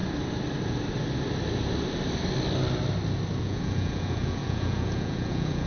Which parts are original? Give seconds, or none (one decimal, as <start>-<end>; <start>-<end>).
0.0-3.4